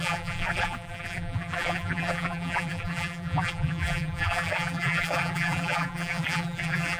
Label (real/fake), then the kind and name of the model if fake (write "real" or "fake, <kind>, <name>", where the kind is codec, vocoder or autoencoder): fake, vocoder, BigVGAN v2